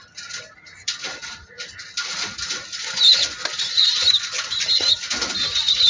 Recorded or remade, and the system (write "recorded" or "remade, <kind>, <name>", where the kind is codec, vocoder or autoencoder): recorded